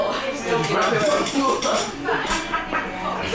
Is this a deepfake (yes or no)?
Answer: no